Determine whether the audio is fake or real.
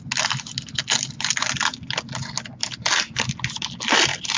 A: real